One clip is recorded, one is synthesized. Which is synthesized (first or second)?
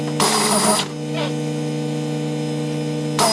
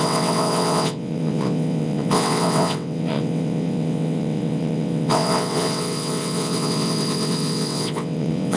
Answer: second